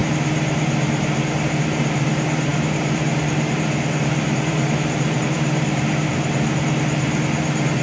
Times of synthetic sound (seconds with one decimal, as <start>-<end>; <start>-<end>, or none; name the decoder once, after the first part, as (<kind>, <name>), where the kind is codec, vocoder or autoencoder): 0.0-7.8 (vocoder, BigVGAN v2)